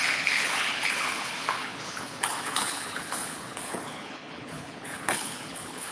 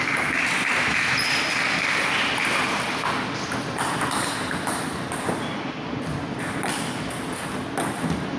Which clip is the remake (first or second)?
first